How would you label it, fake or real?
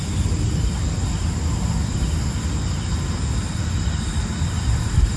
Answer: real